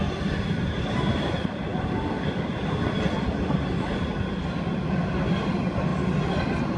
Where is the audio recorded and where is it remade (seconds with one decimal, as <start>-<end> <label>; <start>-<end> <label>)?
0.0-6.8 recorded